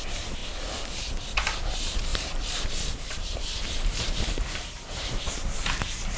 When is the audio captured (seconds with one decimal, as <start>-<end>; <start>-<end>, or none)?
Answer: 0.0-2.1; 5.8-6.2